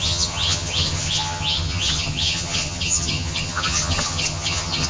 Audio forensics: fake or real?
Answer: fake